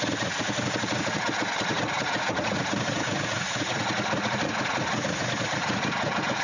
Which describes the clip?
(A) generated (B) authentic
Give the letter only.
A